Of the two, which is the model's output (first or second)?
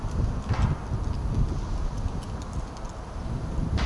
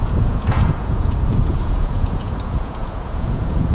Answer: second